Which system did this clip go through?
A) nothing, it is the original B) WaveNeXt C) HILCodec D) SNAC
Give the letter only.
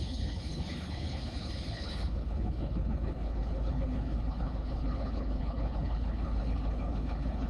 C